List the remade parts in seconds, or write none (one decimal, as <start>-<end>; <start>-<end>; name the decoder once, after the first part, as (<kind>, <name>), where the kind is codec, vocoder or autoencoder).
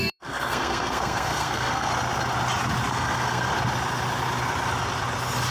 0.0-1.9 (codec, SNAC); 2.9-3.5